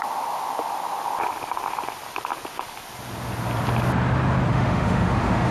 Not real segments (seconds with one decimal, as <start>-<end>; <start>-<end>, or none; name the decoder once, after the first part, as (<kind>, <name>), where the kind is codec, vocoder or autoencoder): 4.5-5.5 (autoencoder, DAC-VAE)